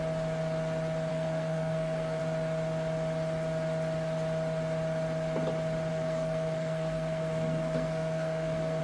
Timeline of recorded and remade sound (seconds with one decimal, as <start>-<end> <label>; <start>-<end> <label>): 0.0-1.1 recorded; 1.1-2.2 remade; 2.2-5.9 recorded; 5.9-8.8 remade